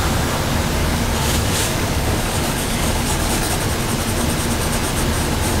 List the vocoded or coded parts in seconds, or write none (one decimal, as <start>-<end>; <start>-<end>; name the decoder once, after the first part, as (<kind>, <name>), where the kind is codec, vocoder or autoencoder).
0.8-3.5 (codec, DAC)